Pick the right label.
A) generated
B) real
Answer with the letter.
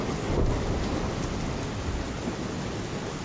B